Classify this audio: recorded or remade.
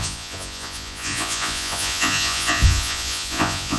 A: remade